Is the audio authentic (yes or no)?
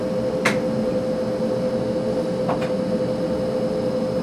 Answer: yes